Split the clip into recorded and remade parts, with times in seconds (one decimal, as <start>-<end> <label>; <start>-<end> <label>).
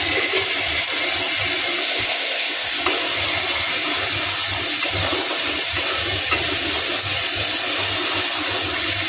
0.0-1.8 recorded; 1.8-2.8 remade; 2.8-9.1 recorded